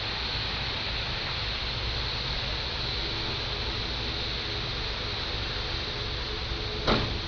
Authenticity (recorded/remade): recorded